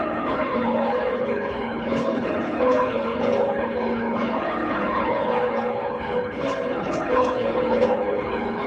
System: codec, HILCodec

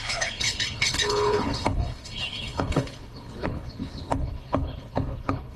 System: codec, HILCodec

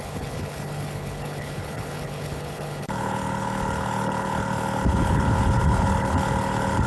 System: codec, HILCodec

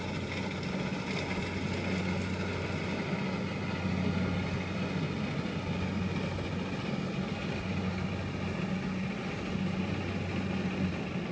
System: none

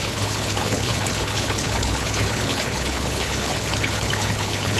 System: codec, HILCodec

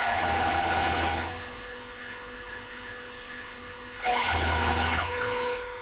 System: codec, HILCodec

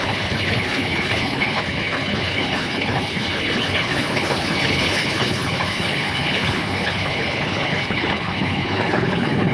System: codec, HILCodec